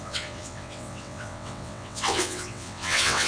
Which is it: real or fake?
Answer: fake